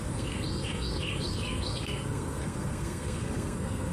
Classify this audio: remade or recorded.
remade